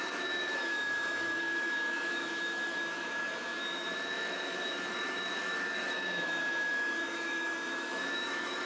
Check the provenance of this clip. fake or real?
fake